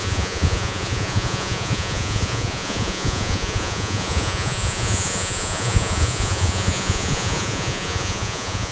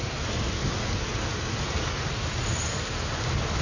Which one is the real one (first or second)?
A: second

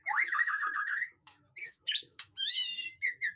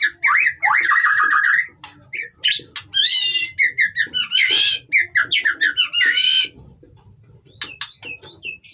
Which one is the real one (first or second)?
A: second